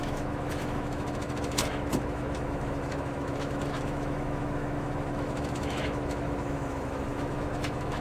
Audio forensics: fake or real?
fake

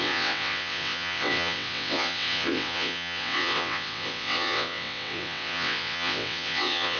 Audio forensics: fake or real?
fake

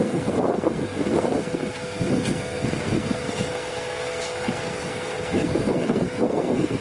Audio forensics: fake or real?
fake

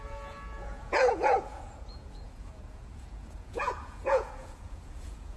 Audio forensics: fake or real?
fake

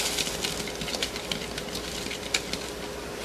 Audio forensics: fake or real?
real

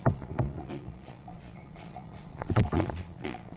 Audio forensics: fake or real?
fake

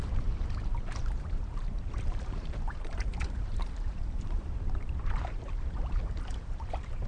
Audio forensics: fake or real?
fake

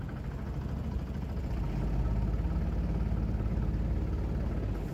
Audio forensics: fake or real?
real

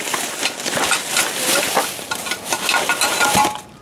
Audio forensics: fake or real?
fake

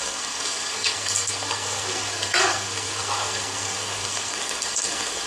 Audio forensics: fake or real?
fake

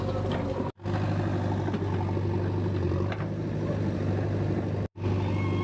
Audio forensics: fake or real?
real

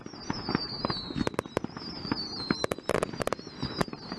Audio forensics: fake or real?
real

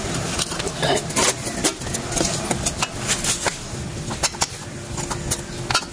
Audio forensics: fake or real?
real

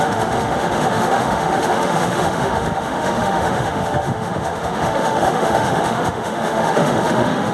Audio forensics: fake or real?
fake